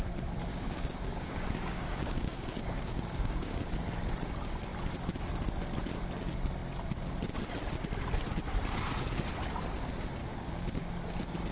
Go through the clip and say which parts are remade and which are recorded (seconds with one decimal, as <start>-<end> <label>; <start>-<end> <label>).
0.0-0.5 recorded; 0.5-3.7 remade; 3.7-10.2 recorded; 10.2-10.9 remade; 10.9-11.5 recorded